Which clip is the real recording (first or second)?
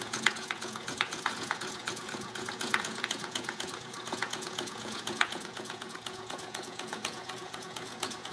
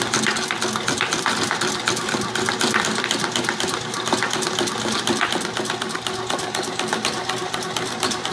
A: second